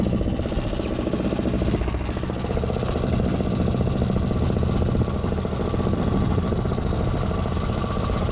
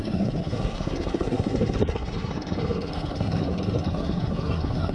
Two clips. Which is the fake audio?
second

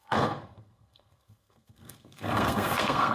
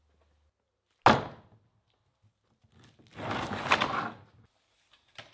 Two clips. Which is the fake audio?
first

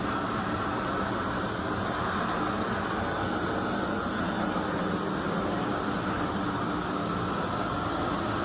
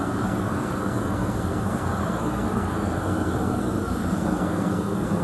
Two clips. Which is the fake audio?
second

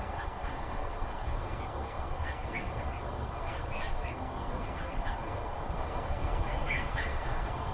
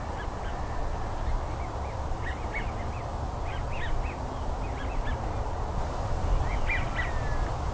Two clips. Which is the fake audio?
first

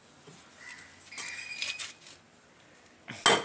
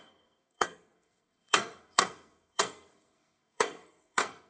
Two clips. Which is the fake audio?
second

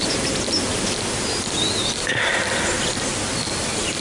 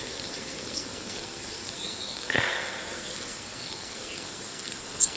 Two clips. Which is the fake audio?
second